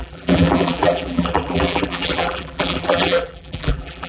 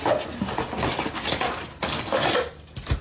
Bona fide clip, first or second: second